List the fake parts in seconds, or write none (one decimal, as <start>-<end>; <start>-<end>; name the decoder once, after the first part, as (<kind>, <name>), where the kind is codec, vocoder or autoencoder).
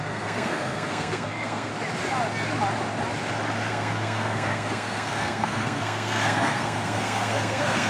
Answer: 0.0-1.7 (codec, SNAC); 3.7-7.9